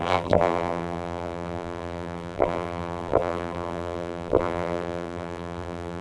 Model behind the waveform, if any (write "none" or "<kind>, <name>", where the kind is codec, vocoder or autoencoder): vocoder, BigVGAN v2